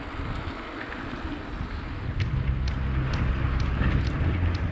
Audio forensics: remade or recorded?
recorded